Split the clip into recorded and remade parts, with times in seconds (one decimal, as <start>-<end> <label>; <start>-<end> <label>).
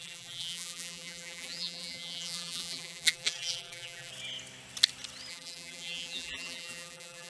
0.0-4.1 remade; 4.1-5.3 recorded; 5.3-7.3 remade